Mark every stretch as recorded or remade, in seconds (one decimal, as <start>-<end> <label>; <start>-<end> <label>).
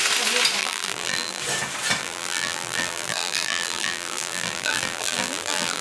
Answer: 0.0-0.6 recorded; 0.6-1.4 remade; 1.4-2.0 recorded; 2.0-5.8 remade